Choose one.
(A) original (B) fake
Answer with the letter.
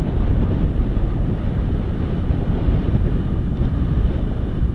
A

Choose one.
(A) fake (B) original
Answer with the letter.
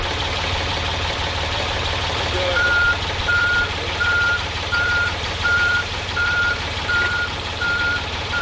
A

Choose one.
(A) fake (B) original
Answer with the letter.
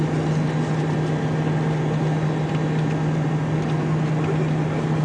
B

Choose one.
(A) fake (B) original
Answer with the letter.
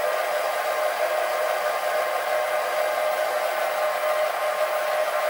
B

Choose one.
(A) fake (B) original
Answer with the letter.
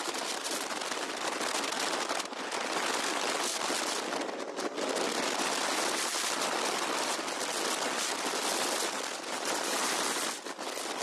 B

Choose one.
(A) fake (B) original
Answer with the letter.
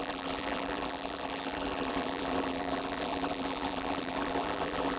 A